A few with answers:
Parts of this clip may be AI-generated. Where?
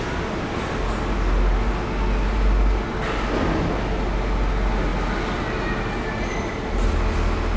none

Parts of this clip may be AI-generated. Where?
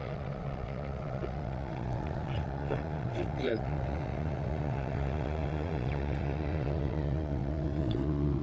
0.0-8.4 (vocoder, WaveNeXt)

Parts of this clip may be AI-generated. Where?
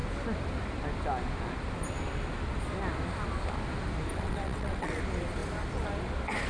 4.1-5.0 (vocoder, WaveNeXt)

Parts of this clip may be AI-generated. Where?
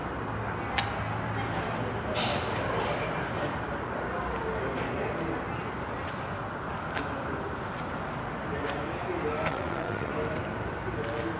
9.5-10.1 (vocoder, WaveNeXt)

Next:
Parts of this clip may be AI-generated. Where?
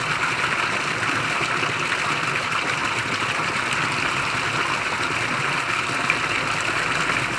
none